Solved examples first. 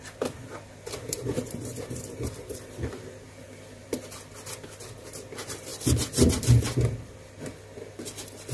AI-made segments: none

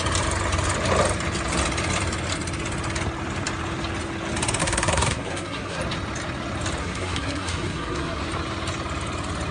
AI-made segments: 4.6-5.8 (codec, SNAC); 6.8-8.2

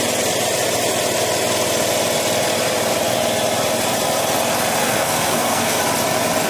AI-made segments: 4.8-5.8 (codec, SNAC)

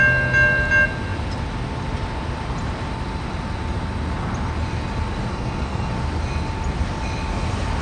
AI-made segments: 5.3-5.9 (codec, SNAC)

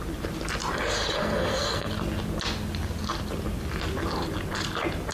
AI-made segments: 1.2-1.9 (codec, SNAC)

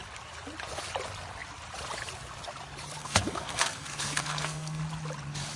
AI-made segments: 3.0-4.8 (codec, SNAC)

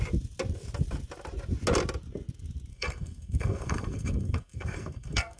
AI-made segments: 2.7-5.4 (codec, SNAC)

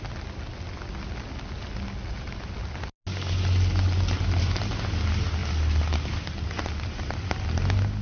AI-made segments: none